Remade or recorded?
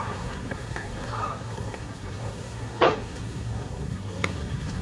remade